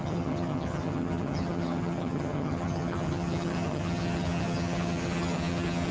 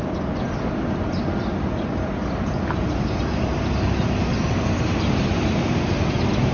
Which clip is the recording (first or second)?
second